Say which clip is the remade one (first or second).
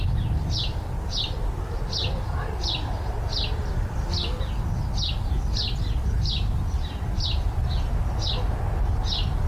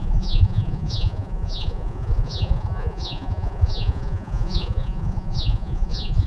second